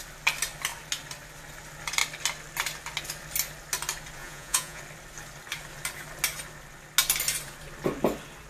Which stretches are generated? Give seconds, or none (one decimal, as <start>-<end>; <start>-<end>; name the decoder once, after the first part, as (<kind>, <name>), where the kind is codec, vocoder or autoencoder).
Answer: 4.2-4.8 (vocoder, Vocos)